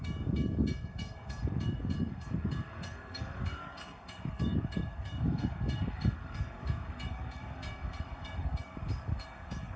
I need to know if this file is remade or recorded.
remade